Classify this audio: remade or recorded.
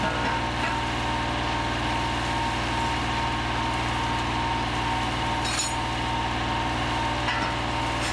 recorded